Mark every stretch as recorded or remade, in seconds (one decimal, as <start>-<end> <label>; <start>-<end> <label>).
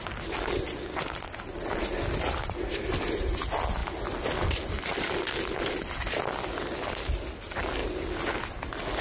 0.0-9.0 recorded